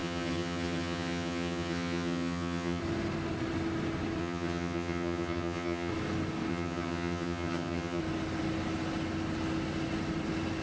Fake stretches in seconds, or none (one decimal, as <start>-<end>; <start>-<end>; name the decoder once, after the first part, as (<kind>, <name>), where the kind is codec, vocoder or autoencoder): 0.0-2.8 (vocoder, HiFi-GAN); 4.2-5.9; 6.5-8.0